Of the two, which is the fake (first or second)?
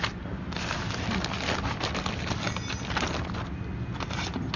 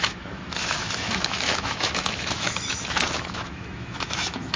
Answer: second